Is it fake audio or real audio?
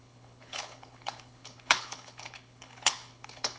fake